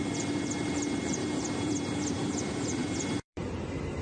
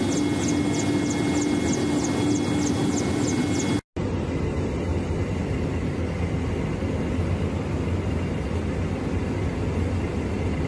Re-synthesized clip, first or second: first